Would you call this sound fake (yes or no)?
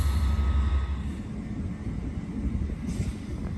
no